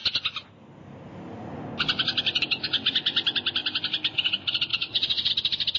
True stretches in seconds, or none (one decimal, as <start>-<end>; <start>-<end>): 0.0-4.7; 5.3-5.8